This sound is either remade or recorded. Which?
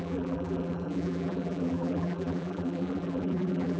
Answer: remade